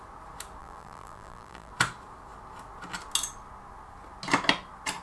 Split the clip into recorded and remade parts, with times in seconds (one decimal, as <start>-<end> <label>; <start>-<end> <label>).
0.0-0.6 recorded; 0.6-1.7 remade; 1.7-5.0 recorded